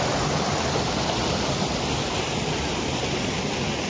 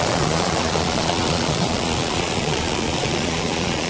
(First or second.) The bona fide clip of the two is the first